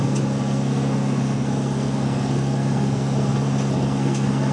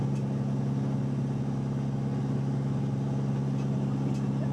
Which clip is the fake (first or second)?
first